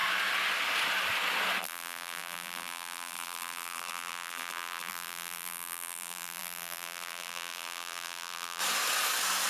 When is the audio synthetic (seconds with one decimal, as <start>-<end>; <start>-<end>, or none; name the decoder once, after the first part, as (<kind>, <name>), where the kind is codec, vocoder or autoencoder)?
1.6-8.6 (vocoder, BigVGAN v2)